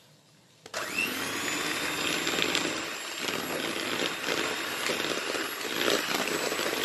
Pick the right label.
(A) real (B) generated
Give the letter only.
A